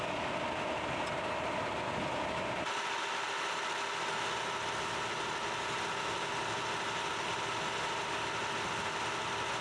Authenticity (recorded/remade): recorded